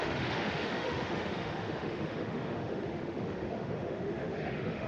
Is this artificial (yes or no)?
yes